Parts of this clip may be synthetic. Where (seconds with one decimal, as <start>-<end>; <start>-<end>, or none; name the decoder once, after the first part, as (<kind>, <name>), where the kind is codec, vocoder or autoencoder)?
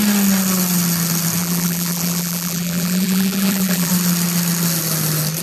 1.4-3.9 (vocoder, BigVGAN v2)